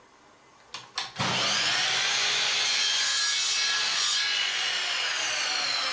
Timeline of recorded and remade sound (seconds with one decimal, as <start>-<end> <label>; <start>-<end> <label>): 0.0-1.0 recorded; 1.0-3.2 remade; 3.2-3.9 recorded; 3.9-5.1 remade; 5.1-5.9 recorded